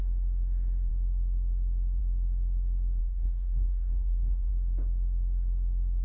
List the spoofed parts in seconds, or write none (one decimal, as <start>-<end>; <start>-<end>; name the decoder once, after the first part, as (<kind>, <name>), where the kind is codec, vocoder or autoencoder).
3.0-4.5 (codec, SNAC)